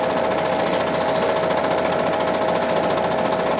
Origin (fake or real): real